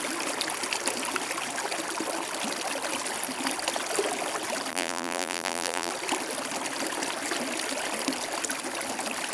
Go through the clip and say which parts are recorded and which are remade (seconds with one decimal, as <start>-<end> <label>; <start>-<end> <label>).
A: 0.0-4.7 recorded; 4.7-5.9 remade; 5.9-9.3 recorded